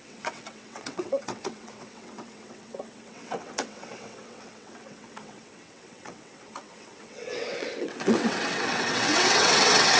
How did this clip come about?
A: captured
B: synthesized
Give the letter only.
B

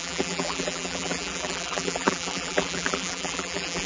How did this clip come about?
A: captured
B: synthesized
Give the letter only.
B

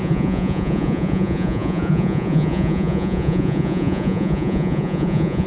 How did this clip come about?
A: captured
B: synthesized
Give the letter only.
B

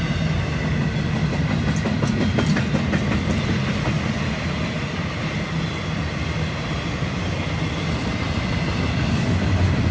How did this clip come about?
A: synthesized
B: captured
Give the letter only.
B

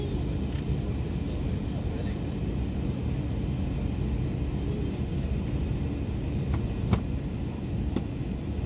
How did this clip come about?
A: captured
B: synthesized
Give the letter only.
A